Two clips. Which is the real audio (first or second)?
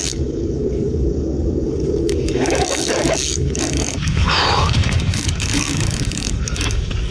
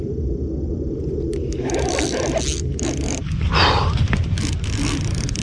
second